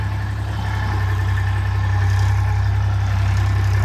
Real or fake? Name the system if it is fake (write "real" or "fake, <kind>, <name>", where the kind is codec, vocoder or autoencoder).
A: real